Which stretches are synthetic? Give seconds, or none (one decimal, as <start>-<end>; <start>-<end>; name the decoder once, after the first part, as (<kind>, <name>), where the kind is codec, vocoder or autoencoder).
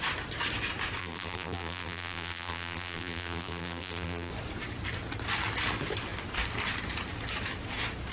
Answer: 1.0-4.3 (vocoder, BigVGAN v2)